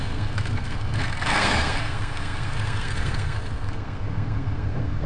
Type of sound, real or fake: fake